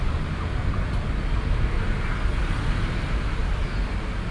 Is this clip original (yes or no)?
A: yes